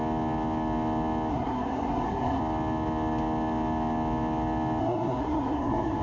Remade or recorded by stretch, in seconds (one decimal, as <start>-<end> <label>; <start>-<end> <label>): 0.0-1.3 recorded; 1.3-2.4 remade; 2.4-4.8 recorded; 4.8-6.0 remade